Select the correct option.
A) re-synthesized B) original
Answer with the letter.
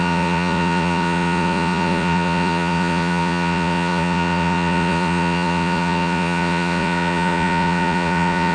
A